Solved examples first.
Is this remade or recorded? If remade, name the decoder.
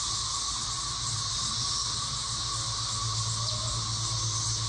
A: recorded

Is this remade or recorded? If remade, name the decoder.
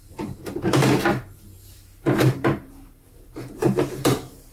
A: remade, vocoder, BigVGAN v2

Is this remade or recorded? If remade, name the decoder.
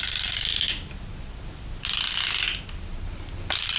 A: recorded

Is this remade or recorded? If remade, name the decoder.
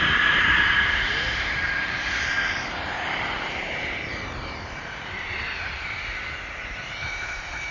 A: remade, vocoder, BigVGAN v2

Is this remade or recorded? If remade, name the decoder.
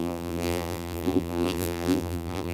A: remade, vocoder, BigVGAN v2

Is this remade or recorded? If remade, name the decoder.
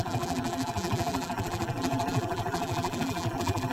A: remade, vocoder, BigVGAN v2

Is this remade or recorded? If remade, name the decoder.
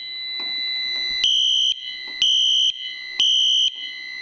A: recorded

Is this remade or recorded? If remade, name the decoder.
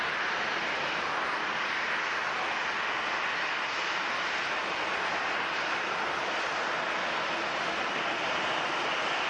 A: recorded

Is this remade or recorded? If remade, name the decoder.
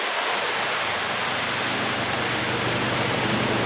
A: recorded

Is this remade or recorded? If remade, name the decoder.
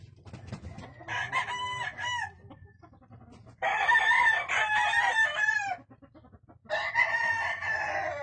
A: remade, vocoder, BigVGAN v2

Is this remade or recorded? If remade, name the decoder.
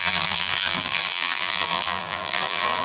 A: remade, vocoder, BigVGAN v2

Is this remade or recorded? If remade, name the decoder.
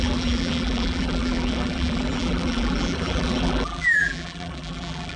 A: remade, vocoder, BigVGAN v2